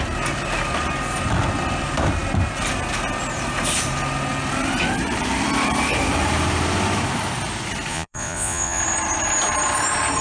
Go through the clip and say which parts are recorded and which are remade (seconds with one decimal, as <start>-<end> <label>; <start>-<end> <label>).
0.0-7.9 recorded; 7.9-8.8 remade; 8.8-10.2 recorded